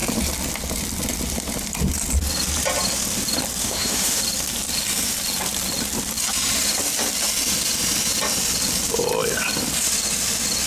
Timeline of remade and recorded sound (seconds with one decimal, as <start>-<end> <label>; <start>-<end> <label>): 0.0-3.6 recorded; 3.6-4.2 remade; 4.2-10.7 recorded